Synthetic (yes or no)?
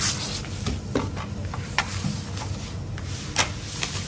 no